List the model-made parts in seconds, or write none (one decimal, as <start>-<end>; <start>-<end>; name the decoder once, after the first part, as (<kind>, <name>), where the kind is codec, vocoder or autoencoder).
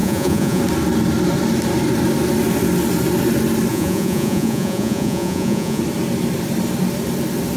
0.0-0.6 (vocoder, Vocos); 3.7-5.8